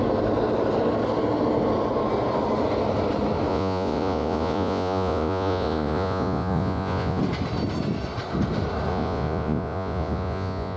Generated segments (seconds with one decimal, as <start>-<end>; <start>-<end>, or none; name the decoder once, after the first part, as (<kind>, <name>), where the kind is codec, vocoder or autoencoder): 3.5-7.2 (vocoder, Vocos); 8.9-10.8